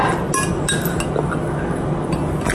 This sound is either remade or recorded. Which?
recorded